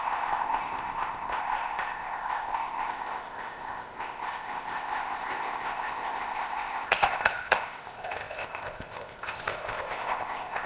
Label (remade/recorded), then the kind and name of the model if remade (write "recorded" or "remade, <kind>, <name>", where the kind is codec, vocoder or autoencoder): remade, codec, ZipCodec